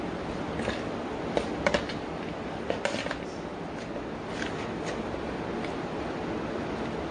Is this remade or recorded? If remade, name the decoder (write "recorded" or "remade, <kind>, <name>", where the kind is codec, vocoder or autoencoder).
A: recorded